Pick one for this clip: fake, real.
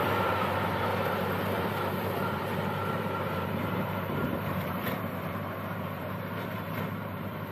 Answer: fake